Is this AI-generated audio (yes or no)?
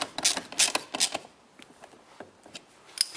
no